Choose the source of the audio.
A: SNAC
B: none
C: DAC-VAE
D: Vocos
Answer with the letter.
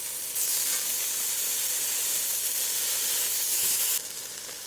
B